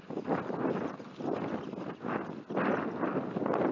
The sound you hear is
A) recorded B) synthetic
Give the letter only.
A